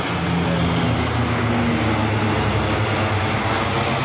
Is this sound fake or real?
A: real